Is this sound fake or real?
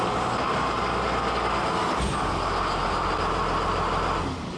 real